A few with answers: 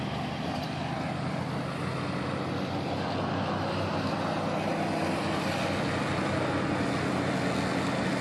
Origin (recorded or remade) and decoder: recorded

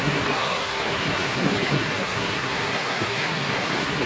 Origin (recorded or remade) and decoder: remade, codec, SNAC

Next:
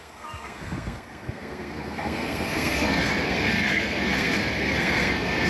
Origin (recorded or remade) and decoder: remade, codec, SNAC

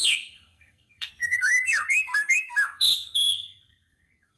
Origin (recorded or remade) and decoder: remade, codec, SNAC